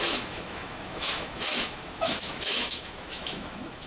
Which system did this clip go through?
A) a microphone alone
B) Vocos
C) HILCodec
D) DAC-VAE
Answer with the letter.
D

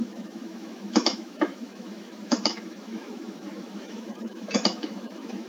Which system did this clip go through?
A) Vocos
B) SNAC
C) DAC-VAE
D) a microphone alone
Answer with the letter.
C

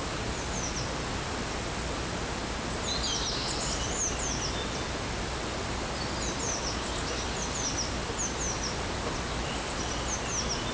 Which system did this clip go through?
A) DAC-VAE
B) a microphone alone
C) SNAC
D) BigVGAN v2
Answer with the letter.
B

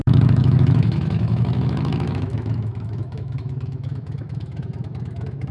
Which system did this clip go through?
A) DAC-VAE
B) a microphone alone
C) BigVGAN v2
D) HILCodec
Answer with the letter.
A